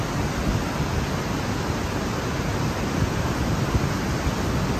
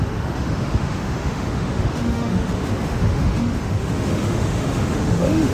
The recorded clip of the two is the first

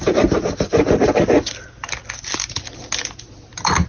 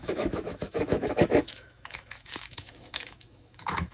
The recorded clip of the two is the first